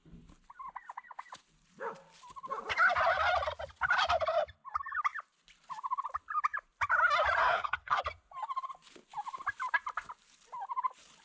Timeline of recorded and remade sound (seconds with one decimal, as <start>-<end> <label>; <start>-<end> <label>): 0.0-7.4 recorded; 7.4-8.0 remade; 8.0-11.2 recorded

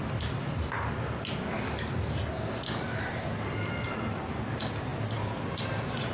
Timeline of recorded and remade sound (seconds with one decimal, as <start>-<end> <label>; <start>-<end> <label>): 0.0-6.1 recorded

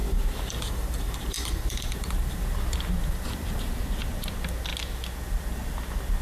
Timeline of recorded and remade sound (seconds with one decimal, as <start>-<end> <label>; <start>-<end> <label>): 0.0-3.7 remade; 3.7-6.2 recorded

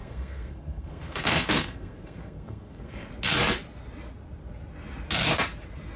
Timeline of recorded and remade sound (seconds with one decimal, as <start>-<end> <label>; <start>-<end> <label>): 0.0-3.1 remade; 3.1-6.0 recorded

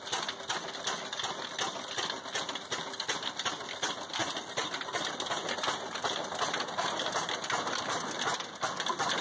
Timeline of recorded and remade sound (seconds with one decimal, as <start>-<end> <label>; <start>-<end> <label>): 0.0-9.2 recorded

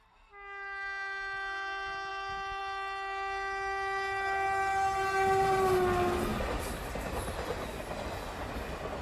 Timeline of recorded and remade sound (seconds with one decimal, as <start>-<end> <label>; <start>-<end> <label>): 0.0-6.3 recorded; 6.3-7.8 remade; 7.8-9.0 recorded